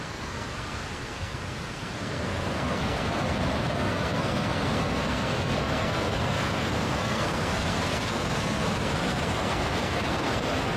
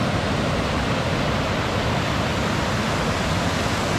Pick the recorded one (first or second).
second